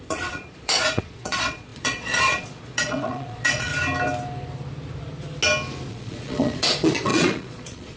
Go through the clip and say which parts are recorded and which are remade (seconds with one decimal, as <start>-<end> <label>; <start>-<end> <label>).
0.0-3.7 remade; 3.7-5.9 recorded; 5.9-8.0 remade